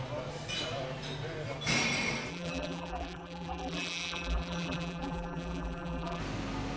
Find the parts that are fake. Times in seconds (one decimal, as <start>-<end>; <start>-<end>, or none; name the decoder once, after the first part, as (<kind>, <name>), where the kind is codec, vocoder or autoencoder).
2.3-6.2 (vocoder, BigVGAN v2)